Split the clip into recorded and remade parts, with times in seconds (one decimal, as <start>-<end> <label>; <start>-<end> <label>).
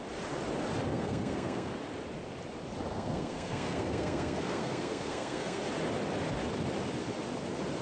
0.0-0.9 recorded; 0.9-1.7 remade; 1.7-2.9 recorded; 2.9-5.6 remade; 5.6-7.8 recorded